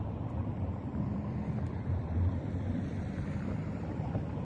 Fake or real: fake